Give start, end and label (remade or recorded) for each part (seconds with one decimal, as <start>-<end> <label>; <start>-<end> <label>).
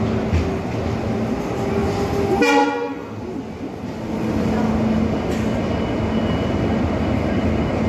0.0-2.6 recorded; 2.6-3.2 remade; 3.2-7.9 recorded